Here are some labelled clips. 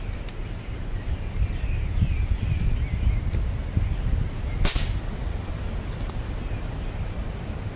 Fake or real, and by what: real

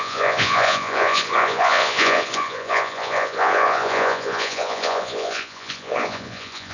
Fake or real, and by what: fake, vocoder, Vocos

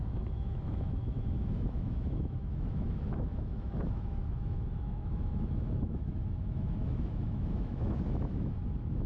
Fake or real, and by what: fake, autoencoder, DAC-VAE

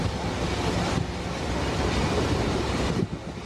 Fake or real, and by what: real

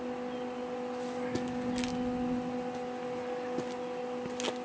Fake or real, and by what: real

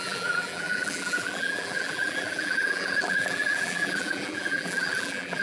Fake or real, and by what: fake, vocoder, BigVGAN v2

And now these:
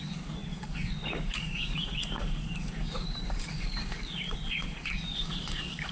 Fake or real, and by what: fake, codec, DAC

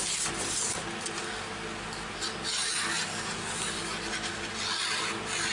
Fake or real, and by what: real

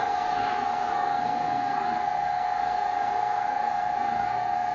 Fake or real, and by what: fake, codec, SNAC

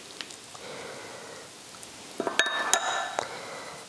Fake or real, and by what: real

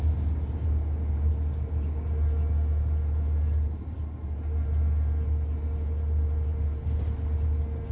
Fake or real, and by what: real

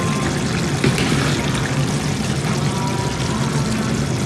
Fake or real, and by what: real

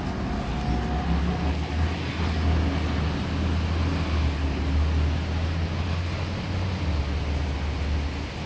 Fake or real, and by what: real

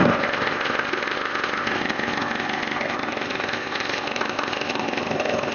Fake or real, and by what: fake, codec, ZipCodec